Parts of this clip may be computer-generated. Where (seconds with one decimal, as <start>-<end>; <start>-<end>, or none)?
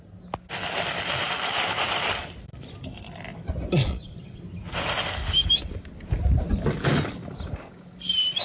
3.8-4.4